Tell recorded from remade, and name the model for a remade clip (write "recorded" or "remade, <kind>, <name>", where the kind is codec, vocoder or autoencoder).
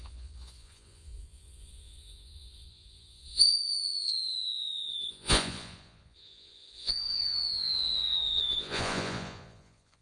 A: remade, vocoder, Vocos